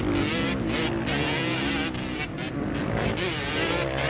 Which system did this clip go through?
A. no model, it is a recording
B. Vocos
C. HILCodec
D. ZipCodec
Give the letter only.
A